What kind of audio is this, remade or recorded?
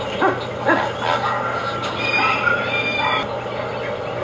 recorded